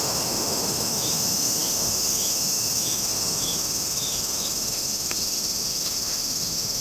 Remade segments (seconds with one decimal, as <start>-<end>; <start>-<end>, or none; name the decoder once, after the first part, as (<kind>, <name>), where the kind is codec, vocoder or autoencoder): 0.0-6.8 (autoencoder, DAC-VAE)